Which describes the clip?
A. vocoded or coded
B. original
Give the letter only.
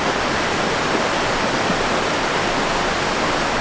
B